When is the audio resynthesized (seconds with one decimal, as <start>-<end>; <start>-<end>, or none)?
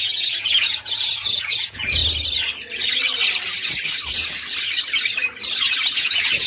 0.0-2.0; 5.9-6.5